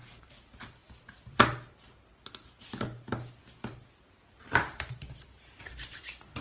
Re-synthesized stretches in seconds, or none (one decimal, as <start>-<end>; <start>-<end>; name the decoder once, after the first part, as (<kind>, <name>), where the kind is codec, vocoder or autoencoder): 0.0-0.8 (vocoder, BigVGAN v2); 2.7-3.4; 4.4-6.4